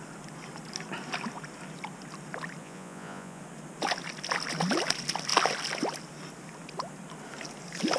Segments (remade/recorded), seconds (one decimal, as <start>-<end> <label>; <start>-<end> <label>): 0.0-2.6 recorded; 2.6-3.4 remade; 3.4-8.0 recorded